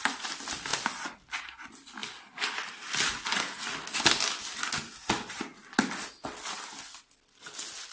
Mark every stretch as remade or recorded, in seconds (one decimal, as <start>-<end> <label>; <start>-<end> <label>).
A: 0.0-7.9 recorded

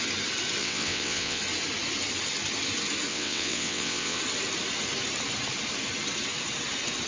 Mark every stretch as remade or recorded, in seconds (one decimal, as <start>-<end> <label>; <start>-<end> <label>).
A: 0.0-0.6 recorded; 0.6-1.4 remade; 1.4-3.1 recorded; 3.1-4.2 remade; 4.2-7.1 recorded

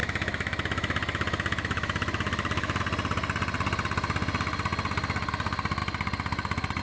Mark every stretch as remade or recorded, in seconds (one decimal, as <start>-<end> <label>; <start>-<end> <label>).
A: 0.0-2.8 remade; 2.8-6.8 recorded